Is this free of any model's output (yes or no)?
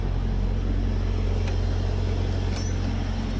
yes